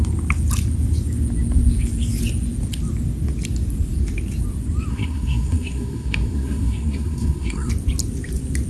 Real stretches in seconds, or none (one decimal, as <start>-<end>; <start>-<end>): 0.0-4.9; 7.7-8.7

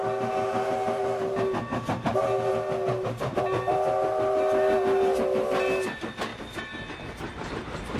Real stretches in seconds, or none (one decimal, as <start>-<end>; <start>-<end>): 0.0-2.9; 3.4-8.0

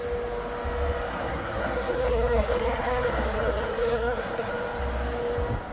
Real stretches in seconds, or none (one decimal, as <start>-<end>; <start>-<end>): 0.0-1.1; 4.5-5.7